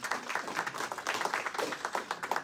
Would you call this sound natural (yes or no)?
yes